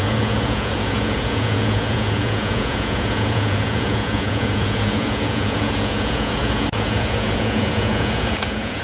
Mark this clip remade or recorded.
remade